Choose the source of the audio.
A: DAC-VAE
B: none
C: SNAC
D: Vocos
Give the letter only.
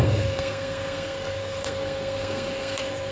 C